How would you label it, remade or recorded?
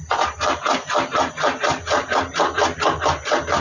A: remade